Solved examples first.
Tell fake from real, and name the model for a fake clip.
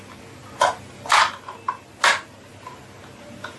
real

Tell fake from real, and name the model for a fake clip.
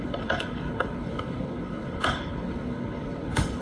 fake, codec, HILCodec